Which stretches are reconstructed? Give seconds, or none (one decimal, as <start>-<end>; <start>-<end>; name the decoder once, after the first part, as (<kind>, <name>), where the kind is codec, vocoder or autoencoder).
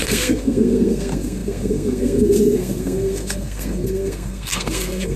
0.0-5.2 (codec, SNAC)